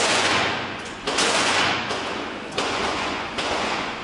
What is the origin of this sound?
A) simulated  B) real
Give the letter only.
A